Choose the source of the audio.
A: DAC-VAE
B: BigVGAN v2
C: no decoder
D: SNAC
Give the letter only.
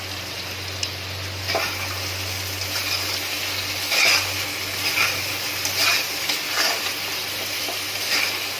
C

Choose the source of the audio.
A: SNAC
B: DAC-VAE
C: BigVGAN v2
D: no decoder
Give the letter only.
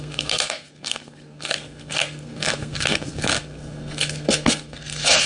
A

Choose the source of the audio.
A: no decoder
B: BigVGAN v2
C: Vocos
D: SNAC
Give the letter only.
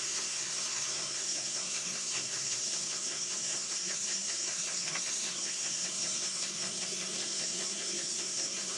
D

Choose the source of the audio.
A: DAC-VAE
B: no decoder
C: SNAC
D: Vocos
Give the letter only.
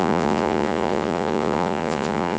D